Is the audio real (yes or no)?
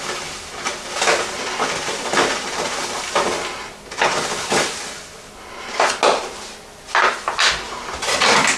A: yes